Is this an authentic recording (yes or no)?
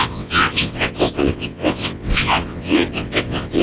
no